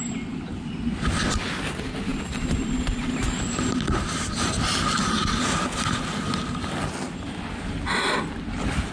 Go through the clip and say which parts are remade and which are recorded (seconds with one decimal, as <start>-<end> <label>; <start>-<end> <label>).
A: 0.0-8.9 recorded